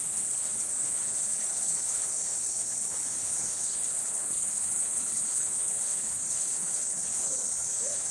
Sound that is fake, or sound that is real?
fake